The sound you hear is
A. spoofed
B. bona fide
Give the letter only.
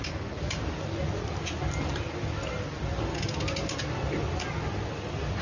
B